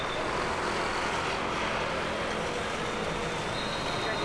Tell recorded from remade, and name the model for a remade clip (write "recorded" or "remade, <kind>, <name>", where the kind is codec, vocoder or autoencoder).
recorded